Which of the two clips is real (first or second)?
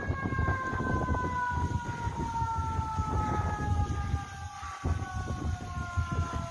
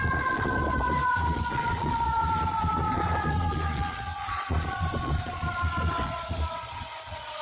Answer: first